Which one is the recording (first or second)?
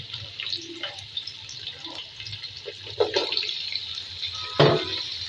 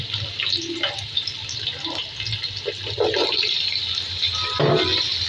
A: second